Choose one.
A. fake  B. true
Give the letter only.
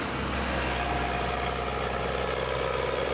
B